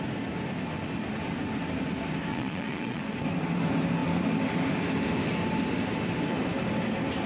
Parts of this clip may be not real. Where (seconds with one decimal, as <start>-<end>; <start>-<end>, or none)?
2.3-3.0